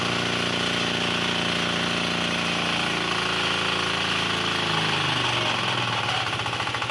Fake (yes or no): no